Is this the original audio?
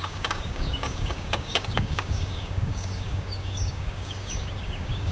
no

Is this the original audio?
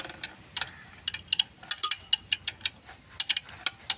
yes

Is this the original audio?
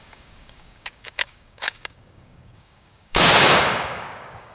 no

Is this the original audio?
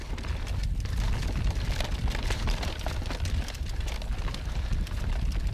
yes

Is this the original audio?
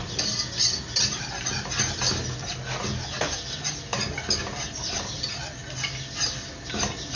yes